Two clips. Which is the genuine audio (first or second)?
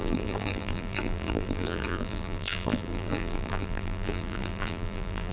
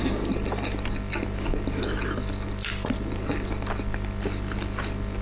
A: second